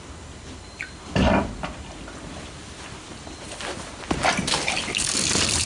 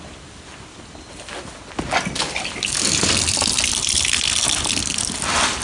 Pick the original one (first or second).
second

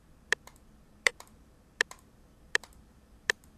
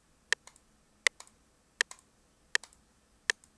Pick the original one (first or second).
second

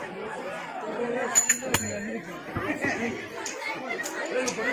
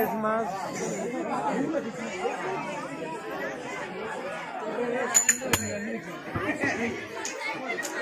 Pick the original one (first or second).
second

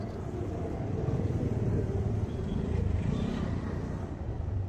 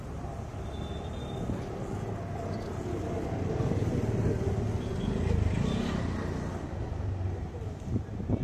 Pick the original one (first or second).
second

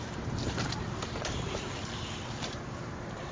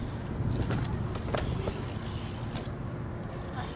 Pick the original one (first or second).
second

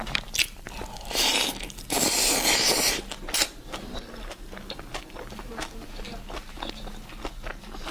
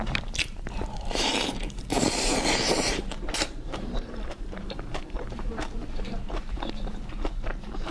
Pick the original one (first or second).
first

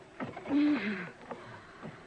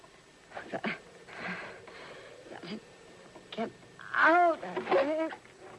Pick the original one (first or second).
second